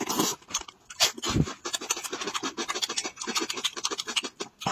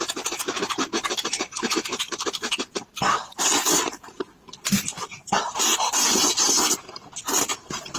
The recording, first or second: first